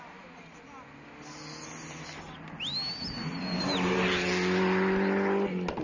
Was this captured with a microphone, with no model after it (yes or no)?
yes